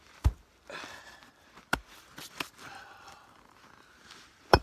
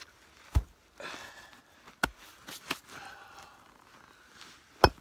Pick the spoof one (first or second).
first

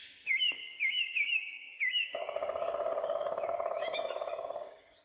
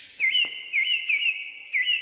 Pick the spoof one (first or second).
first